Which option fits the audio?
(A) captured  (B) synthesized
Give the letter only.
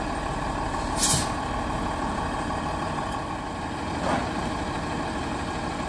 A